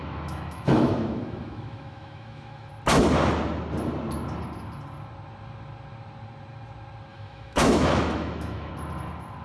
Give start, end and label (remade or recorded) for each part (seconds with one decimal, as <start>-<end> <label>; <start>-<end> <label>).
0.0-2.7 remade; 2.7-7.1 recorded; 7.1-8.7 remade; 8.7-9.4 recorded